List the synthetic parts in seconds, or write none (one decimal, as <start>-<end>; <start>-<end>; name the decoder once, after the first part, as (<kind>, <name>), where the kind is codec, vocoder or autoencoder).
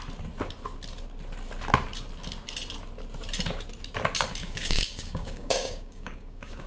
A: 4.4-6.7 (codec, DAC)